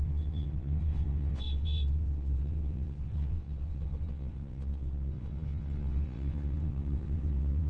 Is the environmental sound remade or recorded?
remade